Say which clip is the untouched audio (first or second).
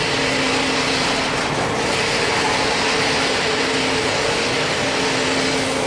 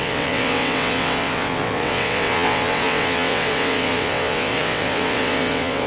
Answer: first